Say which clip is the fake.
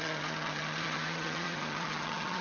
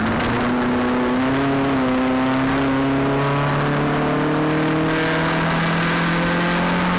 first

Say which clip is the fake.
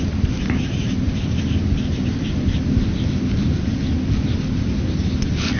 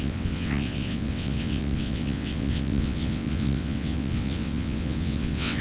second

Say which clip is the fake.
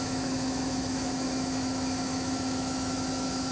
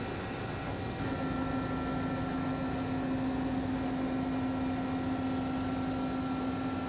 first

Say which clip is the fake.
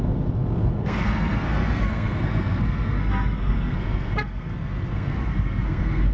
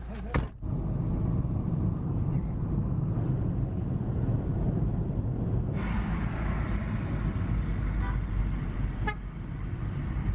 first